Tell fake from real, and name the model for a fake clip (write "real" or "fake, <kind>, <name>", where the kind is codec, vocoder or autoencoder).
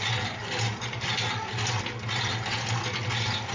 real